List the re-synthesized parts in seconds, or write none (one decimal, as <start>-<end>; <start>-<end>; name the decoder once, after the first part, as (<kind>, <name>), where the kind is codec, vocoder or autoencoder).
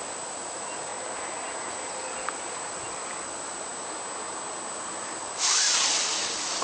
0.0-0.9 (vocoder, BigVGAN v2); 1.7-3.7; 4.7-6.6